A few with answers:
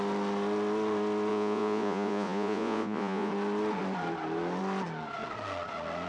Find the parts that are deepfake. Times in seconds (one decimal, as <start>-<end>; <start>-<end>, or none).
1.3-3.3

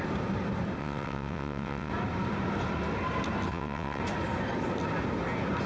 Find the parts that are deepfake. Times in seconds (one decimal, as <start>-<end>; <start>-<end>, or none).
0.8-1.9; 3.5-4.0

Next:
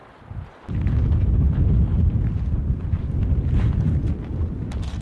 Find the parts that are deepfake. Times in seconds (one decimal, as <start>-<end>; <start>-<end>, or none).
3.0-5.0

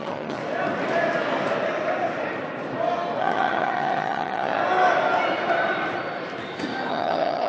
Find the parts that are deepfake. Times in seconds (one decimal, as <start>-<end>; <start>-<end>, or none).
0.0-0.4; 3.2-4.6; 6.9-7.5